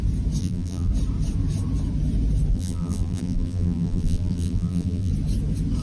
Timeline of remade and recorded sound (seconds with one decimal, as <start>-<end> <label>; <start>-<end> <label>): 0.0-0.4 recorded; 0.4-0.9 remade; 0.9-2.5 recorded; 2.5-5.1 remade; 5.1-5.8 recorded